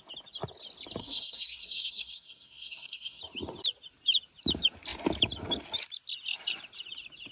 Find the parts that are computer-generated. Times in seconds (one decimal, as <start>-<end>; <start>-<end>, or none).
1.0-3.2